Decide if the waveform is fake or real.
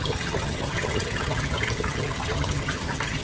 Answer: fake